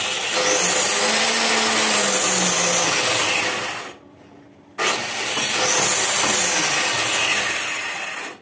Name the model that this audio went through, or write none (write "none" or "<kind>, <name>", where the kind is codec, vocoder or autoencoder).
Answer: none